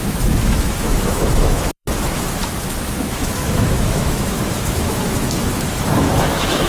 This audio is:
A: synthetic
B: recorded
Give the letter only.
A